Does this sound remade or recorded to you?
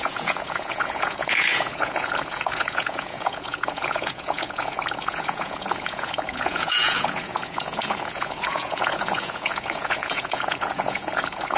remade